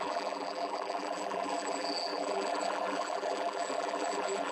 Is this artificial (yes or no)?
yes